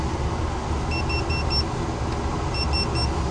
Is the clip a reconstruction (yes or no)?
no